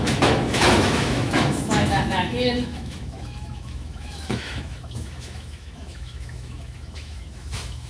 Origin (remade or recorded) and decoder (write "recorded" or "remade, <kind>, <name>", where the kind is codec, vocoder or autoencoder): remade, autoencoder, DAC-VAE